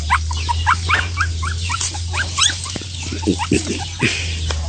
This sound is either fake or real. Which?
real